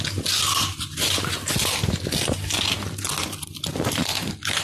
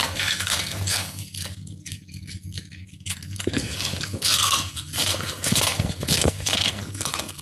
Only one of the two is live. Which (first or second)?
first